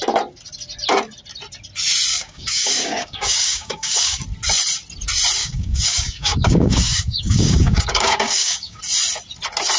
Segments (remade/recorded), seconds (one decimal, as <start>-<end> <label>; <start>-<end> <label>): 0.0-2.1 recorded; 2.1-4.2 remade; 4.2-5.4 recorded; 5.4-8.8 remade; 8.8-9.8 recorded